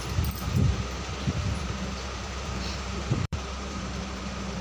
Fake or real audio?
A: fake